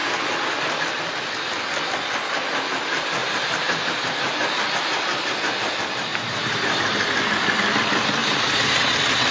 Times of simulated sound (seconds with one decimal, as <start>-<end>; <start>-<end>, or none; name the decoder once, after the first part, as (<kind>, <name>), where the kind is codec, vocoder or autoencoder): 3.2-3.9 (vocoder, BigVGAN v2); 6.1-6.9; 8.2-8.9

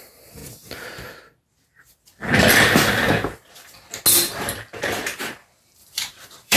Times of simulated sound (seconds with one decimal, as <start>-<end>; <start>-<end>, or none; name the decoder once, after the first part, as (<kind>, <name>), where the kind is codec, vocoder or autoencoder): 0.0-0.4 (vocoder, BigVGAN v2); 4.4-6.6

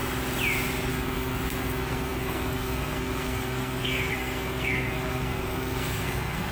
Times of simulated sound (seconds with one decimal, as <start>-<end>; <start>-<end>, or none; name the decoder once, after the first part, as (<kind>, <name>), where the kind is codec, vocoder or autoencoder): 0.9-6.5 (codec, SNAC)

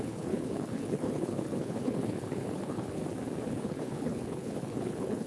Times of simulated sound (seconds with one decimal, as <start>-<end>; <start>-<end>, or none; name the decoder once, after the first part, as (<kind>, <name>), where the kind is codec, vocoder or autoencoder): 0.0-3.0 (codec, HILCodec); 3.5-5.3

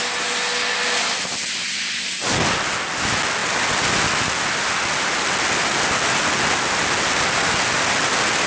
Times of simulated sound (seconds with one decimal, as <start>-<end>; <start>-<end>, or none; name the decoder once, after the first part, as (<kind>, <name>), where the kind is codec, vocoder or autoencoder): none

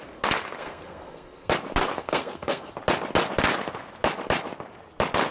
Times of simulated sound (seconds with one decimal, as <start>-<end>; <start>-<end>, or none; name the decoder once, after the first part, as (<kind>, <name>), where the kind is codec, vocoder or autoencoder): 0.6-1.5 (codec, SNAC); 2.0-2.7